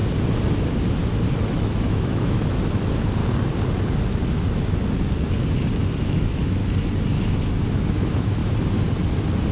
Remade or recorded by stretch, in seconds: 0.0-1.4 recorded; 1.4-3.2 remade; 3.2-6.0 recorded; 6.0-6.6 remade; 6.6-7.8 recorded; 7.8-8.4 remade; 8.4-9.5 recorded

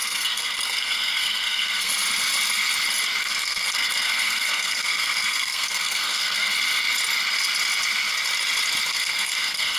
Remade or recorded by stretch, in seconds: 0.0-1.9 remade; 1.9-3.2 recorded; 3.2-6.5 remade; 6.5-8.9 recorded; 8.9-9.8 remade

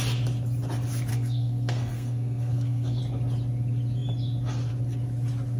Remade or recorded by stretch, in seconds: 0.0-1.1 recorded; 1.1-3.0 remade; 3.0-5.6 recorded

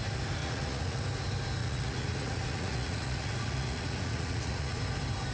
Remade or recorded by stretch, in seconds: 0.0-0.4 recorded; 0.4-1.0 remade; 1.0-1.6 recorded; 1.6-4.8 remade; 4.8-5.3 recorded

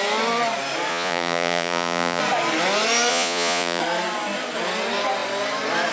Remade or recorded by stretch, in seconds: 0.0-0.9 recorded; 0.9-2.2 remade; 2.2-3.1 recorded; 3.1-3.8 remade; 3.8-5.9 recorded

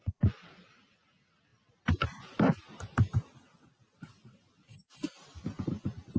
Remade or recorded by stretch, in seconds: 0.0-6.2 recorded